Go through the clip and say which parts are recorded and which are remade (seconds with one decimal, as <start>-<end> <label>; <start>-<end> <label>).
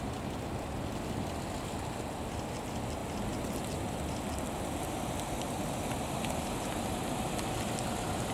0.0-8.3 recorded